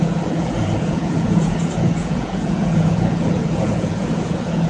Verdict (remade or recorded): remade